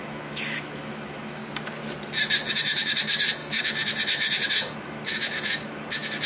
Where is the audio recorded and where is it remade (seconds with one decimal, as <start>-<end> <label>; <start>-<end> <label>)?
0.0-1.4 remade; 1.4-2.5 recorded; 2.5-6.3 remade